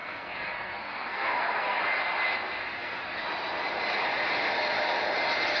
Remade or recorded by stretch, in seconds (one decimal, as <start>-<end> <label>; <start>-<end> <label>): 0.0-1.8 remade; 1.8-2.6 recorded; 2.6-3.2 remade; 3.2-5.6 recorded